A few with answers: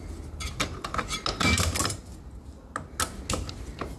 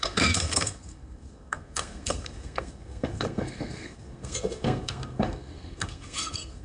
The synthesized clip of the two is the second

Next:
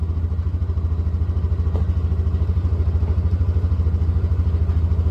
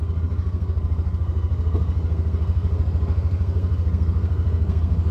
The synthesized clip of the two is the second